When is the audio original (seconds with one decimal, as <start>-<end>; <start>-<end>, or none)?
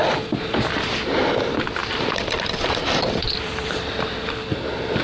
0.0-1.8